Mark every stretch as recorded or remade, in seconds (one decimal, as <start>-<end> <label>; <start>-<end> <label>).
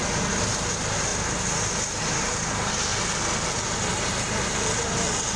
0.0-1.1 remade; 1.1-2.0 recorded; 2.0-2.9 remade; 2.9-4.1 recorded; 4.1-5.4 remade